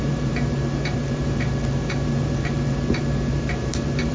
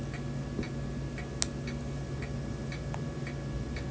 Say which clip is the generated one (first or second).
first